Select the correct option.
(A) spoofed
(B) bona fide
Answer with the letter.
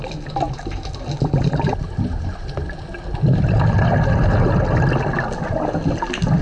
B